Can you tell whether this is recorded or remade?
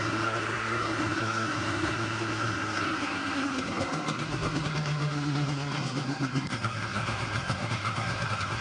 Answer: remade